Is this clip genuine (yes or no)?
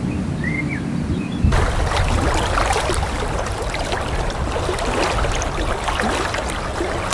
yes